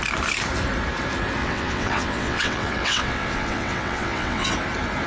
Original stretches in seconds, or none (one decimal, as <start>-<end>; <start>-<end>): 0.0-1.4; 4.5-5.1